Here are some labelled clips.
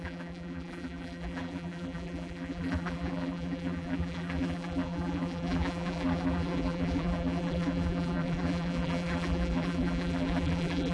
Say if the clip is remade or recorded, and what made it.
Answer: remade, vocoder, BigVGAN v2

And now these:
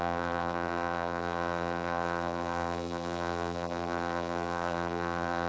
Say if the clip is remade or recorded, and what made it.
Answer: remade, vocoder, BigVGAN v2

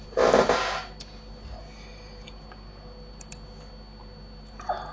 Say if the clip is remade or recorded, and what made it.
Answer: recorded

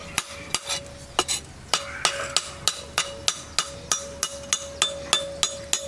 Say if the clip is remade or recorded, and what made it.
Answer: recorded